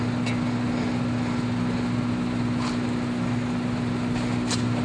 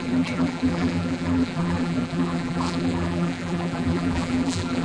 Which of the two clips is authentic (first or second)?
first